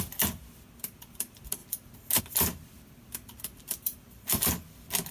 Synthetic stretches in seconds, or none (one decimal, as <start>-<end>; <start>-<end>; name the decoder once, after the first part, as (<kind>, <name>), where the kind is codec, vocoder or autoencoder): none